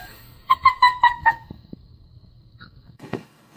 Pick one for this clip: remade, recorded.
remade